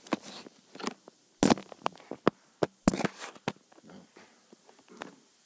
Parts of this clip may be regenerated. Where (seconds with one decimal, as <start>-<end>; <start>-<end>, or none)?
none